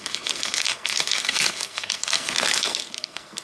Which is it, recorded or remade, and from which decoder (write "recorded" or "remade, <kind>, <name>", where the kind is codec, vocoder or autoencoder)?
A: remade, codec, SNAC